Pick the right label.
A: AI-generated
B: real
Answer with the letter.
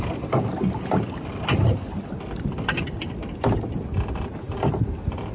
B